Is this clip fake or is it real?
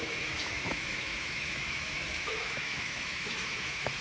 fake